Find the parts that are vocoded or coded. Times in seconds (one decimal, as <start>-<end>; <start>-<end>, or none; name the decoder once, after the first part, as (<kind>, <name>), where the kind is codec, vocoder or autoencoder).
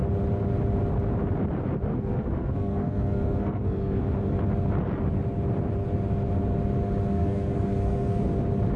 1.9-4.0 (codec, SNAC); 7.1-8.2